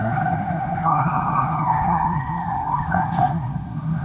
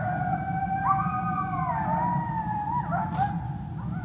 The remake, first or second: first